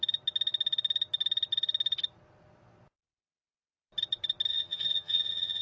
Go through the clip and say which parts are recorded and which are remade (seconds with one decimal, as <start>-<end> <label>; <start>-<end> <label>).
0.0-4.5 recorded; 4.5-5.6 remade